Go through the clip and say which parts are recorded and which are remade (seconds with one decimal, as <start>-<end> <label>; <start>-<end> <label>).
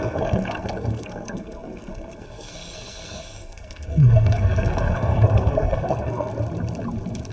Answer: 0.0-6.3 remade; 6.3-7.3 recorded